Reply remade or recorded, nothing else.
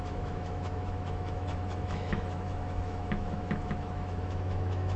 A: remade